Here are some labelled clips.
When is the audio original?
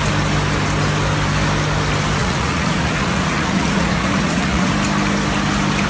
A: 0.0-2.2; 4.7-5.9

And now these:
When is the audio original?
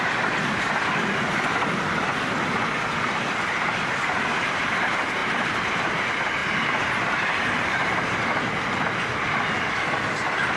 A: 0.0-5.2; 5.9-6.4; 8.8-10.6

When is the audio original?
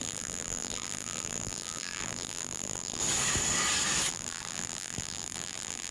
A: 3.0-4.1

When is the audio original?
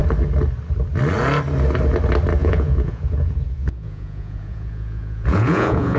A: 0.0-2.4